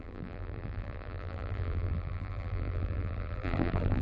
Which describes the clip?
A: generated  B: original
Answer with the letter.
A